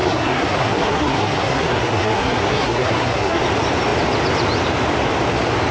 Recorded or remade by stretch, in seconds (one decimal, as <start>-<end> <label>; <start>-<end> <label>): 0.0-3.4 remade; 3.4-5.7 recorded